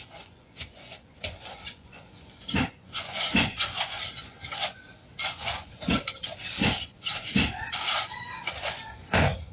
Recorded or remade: remade